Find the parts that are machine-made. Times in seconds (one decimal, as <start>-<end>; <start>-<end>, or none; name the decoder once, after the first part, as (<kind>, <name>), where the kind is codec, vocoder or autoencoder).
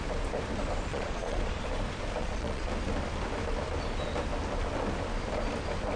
0.9-1.6 (vocoder, Vocos); 2.2-2.7